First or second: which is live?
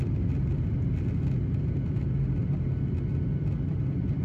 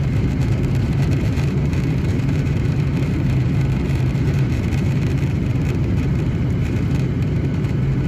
first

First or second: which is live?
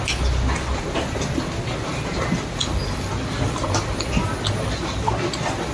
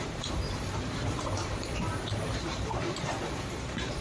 first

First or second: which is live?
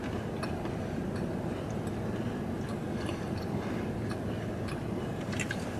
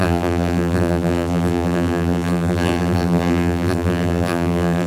first